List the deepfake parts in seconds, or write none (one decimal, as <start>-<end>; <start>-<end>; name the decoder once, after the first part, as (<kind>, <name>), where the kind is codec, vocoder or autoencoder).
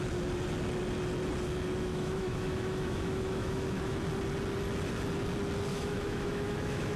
1.9-4.0 (autoencoder, DAC-VAE); 5.7-7.0